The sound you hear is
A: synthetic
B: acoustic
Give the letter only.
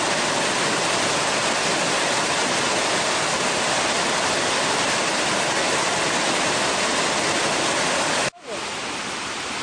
B